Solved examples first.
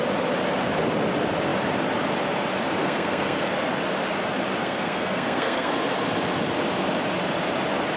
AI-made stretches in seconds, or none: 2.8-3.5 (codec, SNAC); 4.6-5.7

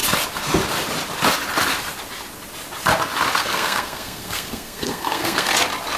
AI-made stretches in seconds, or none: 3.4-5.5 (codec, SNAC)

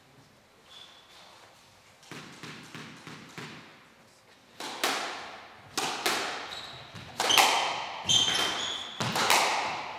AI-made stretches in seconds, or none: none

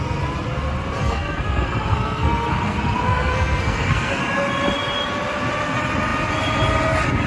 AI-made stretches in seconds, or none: 1.0-4.2 (codec, SNAC)